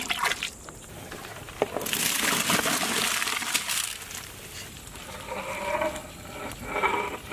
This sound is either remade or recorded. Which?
recorded